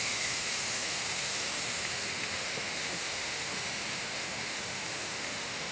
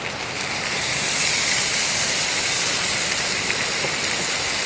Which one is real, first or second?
second